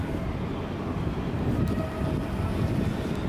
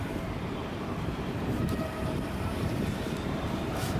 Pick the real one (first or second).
first